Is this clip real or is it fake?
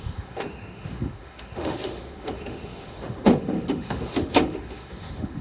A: fake